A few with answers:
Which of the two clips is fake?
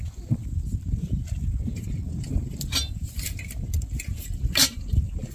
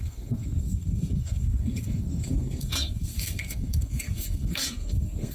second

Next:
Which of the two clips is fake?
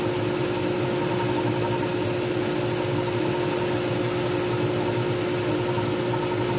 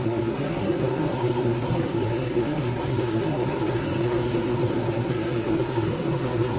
second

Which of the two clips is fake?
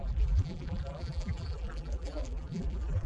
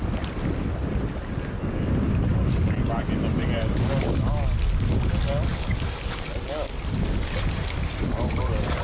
first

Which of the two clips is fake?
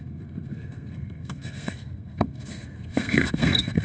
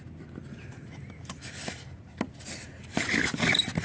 first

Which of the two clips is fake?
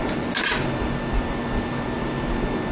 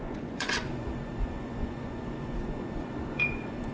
second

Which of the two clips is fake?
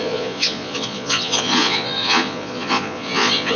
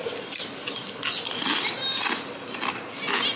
first